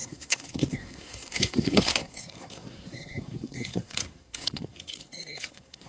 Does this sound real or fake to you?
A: fake